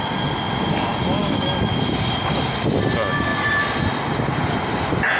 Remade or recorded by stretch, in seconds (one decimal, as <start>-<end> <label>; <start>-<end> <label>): 0.0-1.2 recorded; 1.2-1.8 remade; 1.8-5.2 recorded